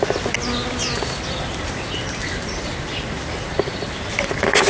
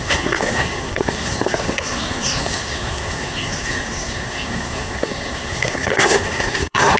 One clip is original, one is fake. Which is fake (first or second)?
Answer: second